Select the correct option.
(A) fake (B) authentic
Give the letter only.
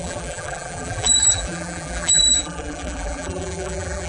A